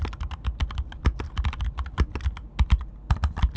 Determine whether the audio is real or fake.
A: real